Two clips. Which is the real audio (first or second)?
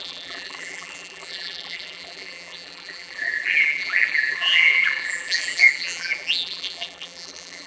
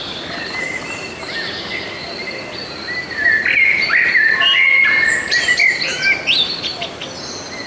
second